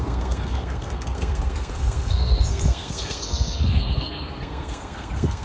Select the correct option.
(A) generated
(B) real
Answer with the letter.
A